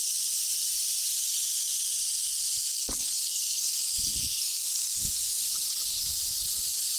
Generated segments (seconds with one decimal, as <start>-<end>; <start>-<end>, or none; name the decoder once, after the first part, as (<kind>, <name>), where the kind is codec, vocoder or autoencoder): 3.3-5.4 (codec, SNAC)